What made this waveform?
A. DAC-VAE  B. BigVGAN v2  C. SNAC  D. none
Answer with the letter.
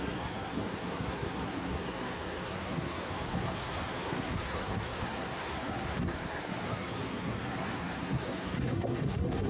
C